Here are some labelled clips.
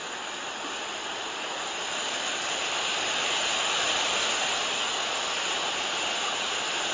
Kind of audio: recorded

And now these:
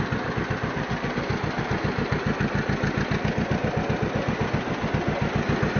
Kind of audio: recorded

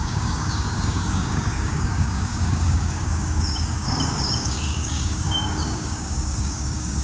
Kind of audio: remade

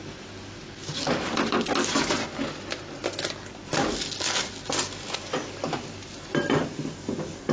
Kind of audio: recorded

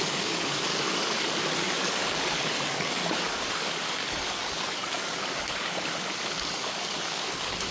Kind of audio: remade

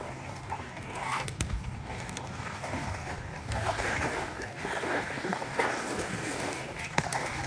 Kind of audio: remade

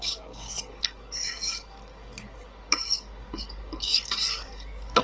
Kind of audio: remade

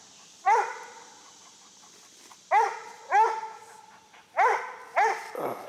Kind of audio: recorded